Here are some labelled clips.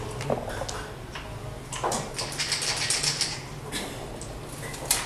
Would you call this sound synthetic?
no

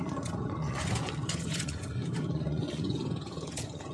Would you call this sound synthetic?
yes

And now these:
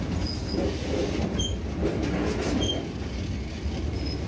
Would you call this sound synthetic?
no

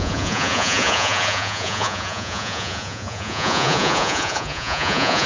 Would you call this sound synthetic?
yes